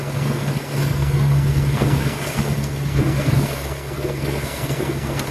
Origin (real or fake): fake